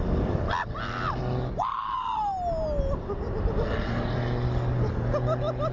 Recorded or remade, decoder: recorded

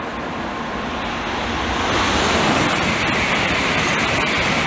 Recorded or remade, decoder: recorded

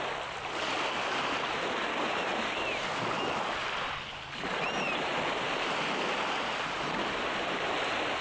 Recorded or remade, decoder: recorded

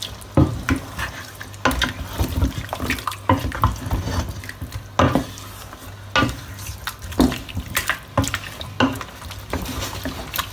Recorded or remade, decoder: recorded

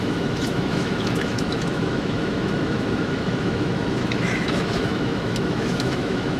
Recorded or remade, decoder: remade, autoencoder, DAC-VAE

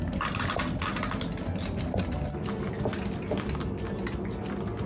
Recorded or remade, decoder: recorded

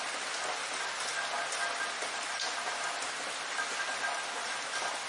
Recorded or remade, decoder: recorded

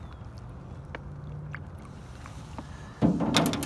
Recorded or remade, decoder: recorded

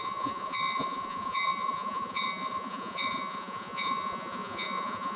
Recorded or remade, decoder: remade, vocoder, Vocos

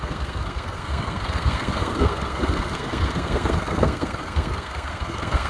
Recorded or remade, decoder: remade, codec, SNAC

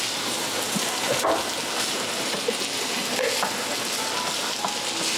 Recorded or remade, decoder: recorded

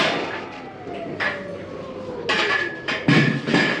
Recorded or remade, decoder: recorded